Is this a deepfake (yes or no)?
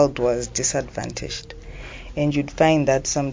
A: no